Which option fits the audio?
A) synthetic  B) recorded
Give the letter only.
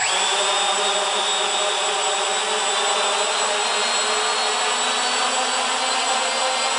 B